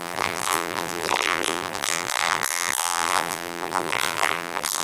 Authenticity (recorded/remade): remade